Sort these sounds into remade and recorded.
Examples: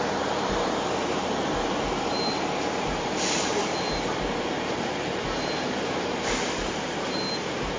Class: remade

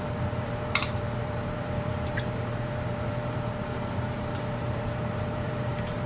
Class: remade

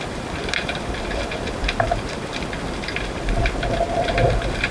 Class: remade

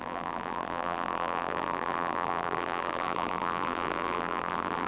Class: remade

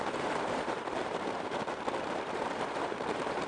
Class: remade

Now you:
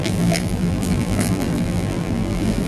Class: remade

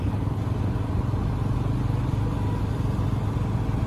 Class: recorded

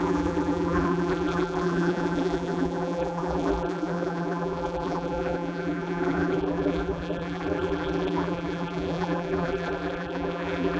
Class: remade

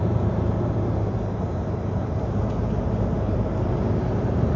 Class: remade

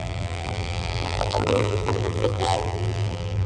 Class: remade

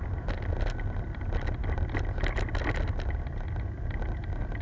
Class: recorded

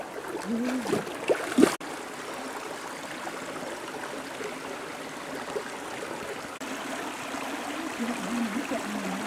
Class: recorded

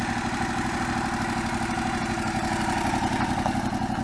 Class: recorded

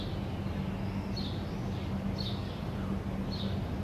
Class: recorded